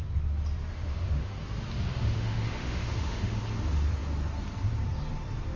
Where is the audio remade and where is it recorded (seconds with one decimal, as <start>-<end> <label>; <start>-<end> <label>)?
0.0-0.7 recorded; 0.7-1.3 remade; 1.3-1.9 recorded; 1.9-3.4 remade; 3.4-5.6 recorded